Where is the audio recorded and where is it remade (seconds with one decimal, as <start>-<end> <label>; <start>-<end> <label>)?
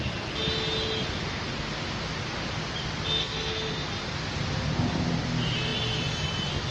0.0-3.2 recorded; 3.2-3.7 remade; 3.7-6.7 recorded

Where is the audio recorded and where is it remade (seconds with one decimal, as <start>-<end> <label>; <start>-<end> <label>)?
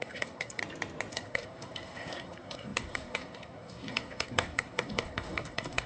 0.0-0.6 remade; 0.6-1.1 recorded; 1.1-5.9 remade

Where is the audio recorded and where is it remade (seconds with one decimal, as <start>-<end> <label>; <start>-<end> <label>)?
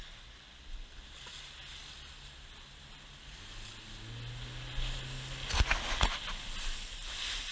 0.0-7.5 recorded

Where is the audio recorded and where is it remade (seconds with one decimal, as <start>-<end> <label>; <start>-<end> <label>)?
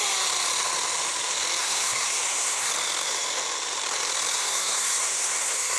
0.0-1.6 recorded; 1.6-2.7 remade; 2.7-4.4 recorded; 4.4-5.8 remade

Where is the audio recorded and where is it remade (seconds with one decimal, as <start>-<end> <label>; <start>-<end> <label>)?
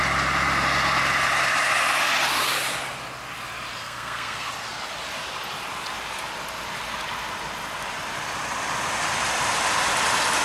0.0-3.8 recorded; 3.8-4.5 remade; 4.5-10.4 recorded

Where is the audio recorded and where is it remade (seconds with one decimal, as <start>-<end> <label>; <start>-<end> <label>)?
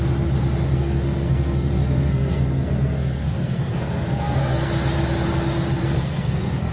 0.0-0.7 recorded; 0.7-4.7 remade; 4.7-5.8 recorded; 5.8-6.7 remade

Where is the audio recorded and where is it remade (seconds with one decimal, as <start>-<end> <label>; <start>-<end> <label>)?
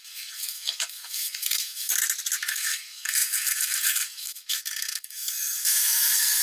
0.0-1.9 remade; 1.9-2.5 recorded; 2.5-6.4 remade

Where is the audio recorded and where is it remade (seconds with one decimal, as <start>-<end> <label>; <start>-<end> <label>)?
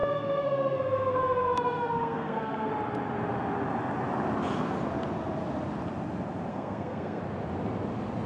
0.0-2.7 remade; 2.7-6.5 recorded; 6.5-7.2 remade; 7.2-8.3 recorded